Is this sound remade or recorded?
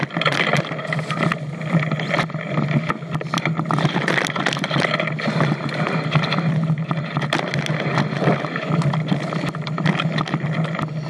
recorded